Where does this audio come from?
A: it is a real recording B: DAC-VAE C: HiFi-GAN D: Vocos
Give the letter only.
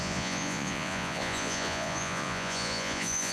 D